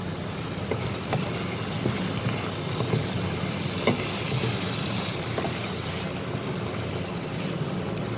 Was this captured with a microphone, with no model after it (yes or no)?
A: yes